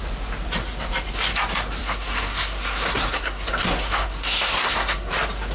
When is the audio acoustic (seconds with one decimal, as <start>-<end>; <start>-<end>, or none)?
0.0-1.8; 5.1-5.5

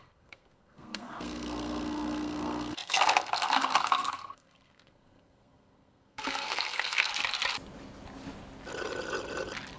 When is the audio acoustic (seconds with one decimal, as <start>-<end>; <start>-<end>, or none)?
7.1-9.8